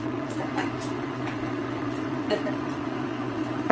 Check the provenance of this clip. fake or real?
fake